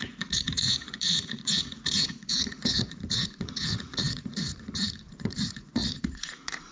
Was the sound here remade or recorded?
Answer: remade